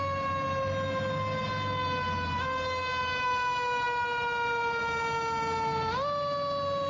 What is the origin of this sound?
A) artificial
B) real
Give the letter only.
B